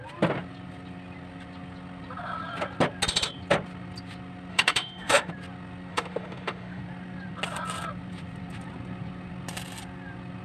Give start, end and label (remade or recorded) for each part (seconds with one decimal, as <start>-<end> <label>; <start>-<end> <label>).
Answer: 0.0-4.5 recorded; 4.5-5.3 remade; 5.3-5.9 recorded; 5.9-6.8 remade; 6.8-10.4 recorded